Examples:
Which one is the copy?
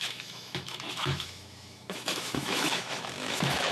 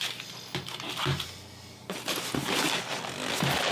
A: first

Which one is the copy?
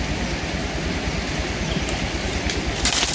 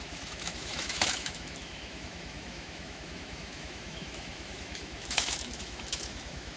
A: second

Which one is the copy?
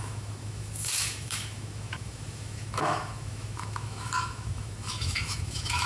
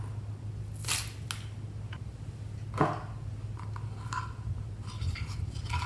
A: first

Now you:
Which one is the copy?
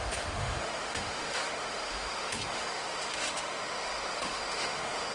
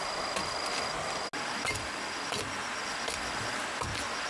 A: first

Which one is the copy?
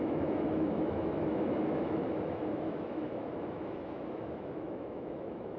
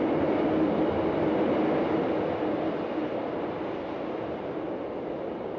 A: first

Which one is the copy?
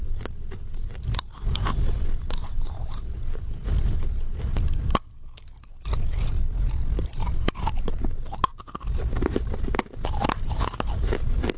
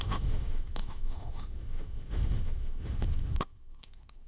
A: second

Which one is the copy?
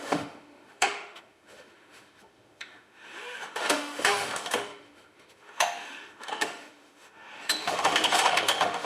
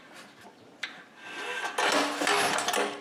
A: first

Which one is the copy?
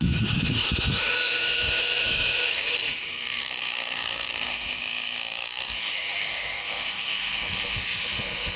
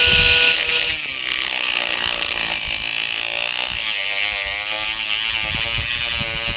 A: first